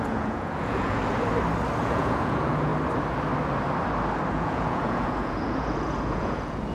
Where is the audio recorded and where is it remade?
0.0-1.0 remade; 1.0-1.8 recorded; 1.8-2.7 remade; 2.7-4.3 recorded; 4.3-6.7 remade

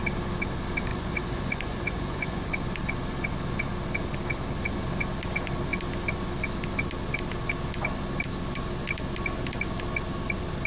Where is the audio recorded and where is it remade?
0.0-0.9 recorded; 0.9-2.5 remade; 2.5-10.7 recorded

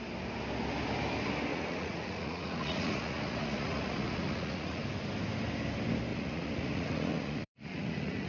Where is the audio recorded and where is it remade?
0.0-1.5 recorded; 1.5-4.8 remade; 4.8-6.1 recorded; 6.1-8.3 remade

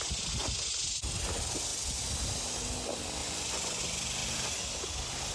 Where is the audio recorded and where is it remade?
0.0-3.2 recorded; 3.2-3.8 remade; 3.8-5.3 recorded

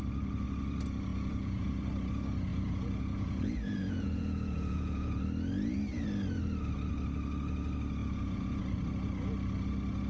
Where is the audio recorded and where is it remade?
0.0-1.1 recorded; 1.1-1.7 remade; 1.7-2.5 recorded; 2.5-5.2 remade; 5.2-8.0 recorded; 8.0-8.6 remade; 8.6-10.1 recorded